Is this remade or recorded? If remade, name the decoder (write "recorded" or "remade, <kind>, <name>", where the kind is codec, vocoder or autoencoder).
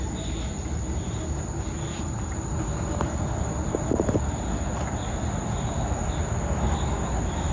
recorded